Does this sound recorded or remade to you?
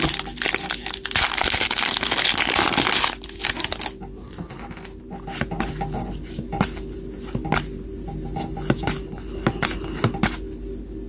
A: recorded